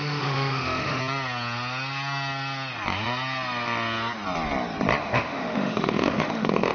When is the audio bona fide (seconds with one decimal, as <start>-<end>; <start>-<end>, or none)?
1.0-5.0